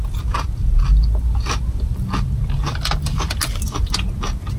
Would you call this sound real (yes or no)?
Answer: yes